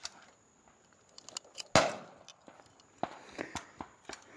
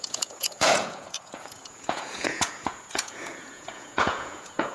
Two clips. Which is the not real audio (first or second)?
second